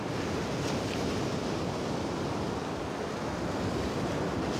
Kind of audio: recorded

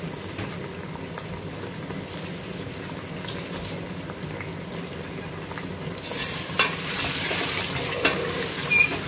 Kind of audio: recorded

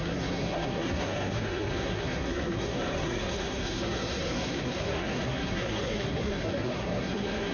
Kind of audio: remade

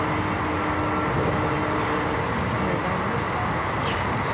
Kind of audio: recorded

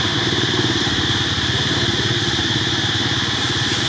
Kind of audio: remade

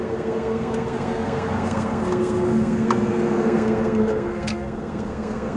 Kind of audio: remade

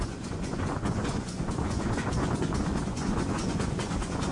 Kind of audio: remade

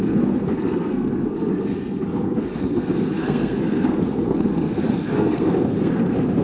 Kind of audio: remade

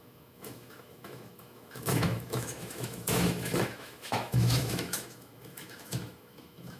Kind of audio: remade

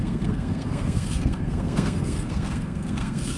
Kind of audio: remade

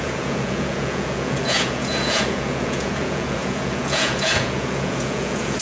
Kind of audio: remade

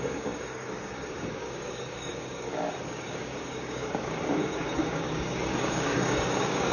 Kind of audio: remade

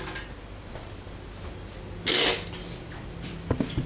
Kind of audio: recorded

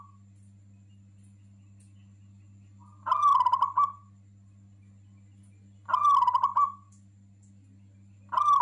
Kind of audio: recorded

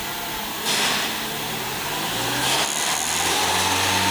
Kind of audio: recorded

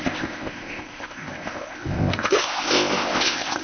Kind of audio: remade